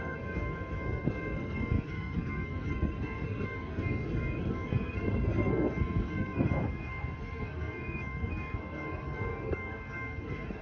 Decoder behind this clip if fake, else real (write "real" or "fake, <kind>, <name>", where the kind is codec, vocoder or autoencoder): fake, codec, SNAC